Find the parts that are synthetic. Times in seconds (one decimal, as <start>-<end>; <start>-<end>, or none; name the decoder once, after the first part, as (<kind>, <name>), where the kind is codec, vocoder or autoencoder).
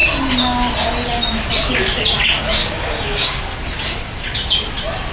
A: 2.6-3.4 (codec, DAC)